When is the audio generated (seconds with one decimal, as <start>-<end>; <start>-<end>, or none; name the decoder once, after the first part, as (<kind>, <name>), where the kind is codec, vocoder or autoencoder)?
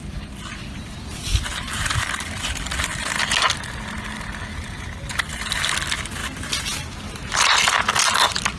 0.0-2.5 (vocoder, BigVGAN v2); 4.5-5.2; 6.2-7.3